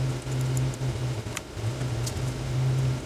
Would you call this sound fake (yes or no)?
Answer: no